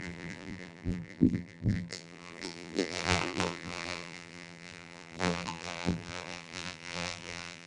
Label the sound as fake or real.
fake